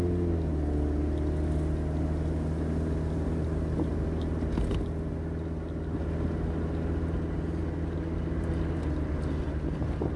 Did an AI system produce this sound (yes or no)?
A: no